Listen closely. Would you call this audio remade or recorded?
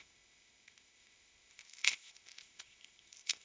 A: remade